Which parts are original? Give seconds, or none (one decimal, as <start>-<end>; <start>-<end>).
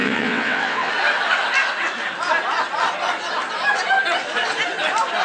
0.9-5.2